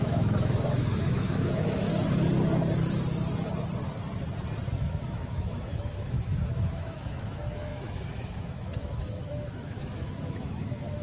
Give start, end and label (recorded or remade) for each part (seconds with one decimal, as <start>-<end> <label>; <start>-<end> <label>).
0.0-1.9 remade; 1.9-4.9 recorded; 4.9-11.0 remade